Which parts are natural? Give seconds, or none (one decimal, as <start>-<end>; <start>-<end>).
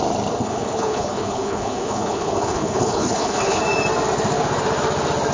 0.0-0.4; 3.6-5.3